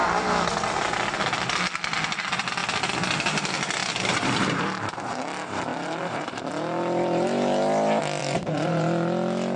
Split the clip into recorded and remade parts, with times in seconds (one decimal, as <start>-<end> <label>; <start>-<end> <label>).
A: 0.0-3.8 recorded; 3.8-4.8 remade; 4.8-5.7 recorded; 5.7-6.5 remade; 6.5-8.2 recorded; 8.2-8.8 remade; 8.8-9.6 recorded